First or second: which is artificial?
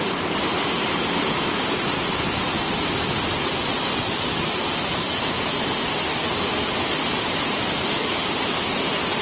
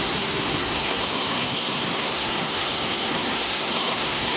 second